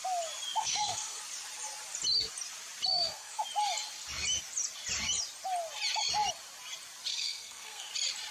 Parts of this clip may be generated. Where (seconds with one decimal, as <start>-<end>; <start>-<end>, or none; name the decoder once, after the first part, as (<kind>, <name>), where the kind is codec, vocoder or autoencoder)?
0.6-1.2 (codec, SNAC); 2.9-3.4; 7.1-7.9